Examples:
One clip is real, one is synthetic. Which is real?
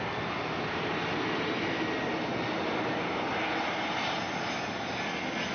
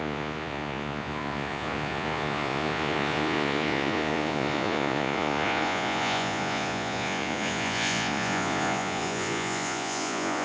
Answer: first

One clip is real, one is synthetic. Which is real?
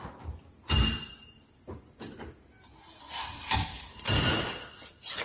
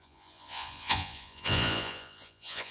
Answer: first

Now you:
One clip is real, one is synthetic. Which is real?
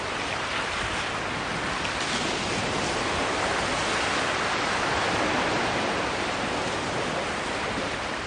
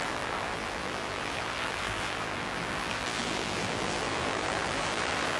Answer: first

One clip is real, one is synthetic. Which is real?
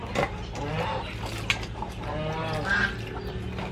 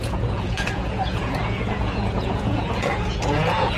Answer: first